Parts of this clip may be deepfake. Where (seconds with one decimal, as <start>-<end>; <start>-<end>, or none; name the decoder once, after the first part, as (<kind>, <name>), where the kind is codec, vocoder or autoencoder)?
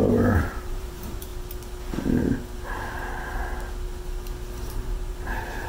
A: 0.0-1.3 (vocoder, BigVGAN v2); 4.7-5.7